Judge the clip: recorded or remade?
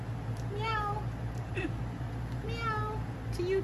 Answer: remade